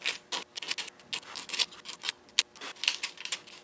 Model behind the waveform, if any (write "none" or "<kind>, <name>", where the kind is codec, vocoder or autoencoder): none